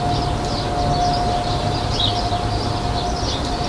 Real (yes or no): yes